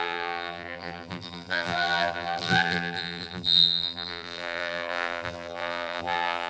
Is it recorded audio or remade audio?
remade